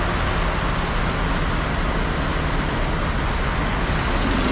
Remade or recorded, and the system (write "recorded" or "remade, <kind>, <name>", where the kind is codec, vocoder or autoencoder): recorded